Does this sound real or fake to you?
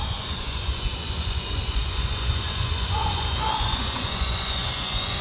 fake